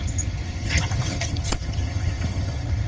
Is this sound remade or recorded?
remade